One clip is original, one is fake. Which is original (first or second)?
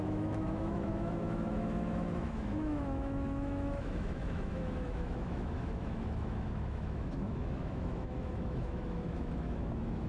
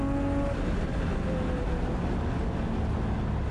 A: second